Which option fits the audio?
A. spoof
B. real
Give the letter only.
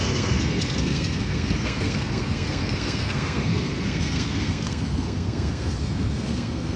A